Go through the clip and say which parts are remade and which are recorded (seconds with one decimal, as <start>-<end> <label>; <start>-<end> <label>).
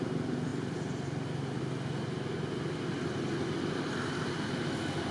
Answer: 0.0-5.1 recorded